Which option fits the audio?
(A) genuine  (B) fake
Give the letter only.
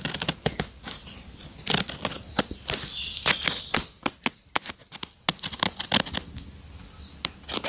A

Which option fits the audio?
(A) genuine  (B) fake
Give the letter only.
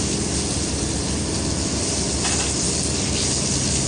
A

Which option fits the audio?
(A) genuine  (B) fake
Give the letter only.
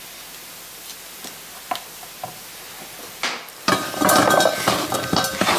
A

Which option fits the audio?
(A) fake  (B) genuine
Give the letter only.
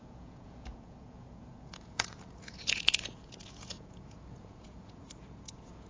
A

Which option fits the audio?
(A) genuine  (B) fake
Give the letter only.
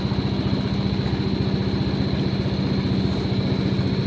A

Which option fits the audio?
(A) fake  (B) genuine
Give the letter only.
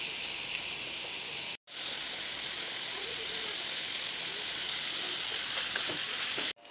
B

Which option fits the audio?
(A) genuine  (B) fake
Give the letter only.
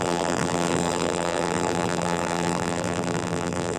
B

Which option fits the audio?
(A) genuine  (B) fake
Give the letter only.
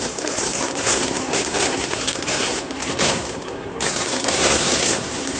B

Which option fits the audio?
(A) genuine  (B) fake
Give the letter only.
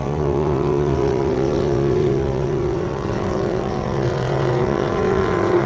B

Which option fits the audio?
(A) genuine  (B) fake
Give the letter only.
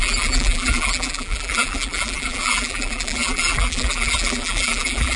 B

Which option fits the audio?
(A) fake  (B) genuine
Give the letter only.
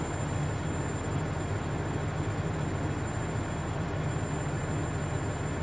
B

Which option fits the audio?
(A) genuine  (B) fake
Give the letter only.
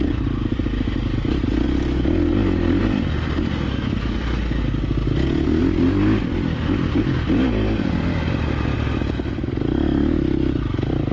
A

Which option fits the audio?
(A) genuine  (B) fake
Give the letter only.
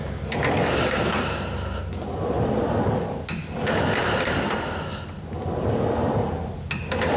A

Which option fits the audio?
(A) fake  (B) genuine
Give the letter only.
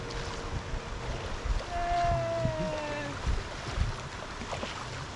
B